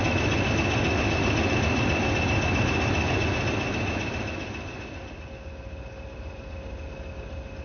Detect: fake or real real